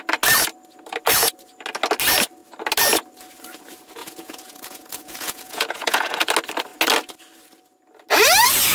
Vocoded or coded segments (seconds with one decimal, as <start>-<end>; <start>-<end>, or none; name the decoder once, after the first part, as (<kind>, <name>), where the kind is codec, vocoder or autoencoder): 4.0-6.3 (vocoder, Vocos)